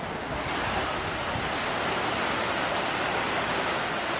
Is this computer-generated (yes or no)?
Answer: no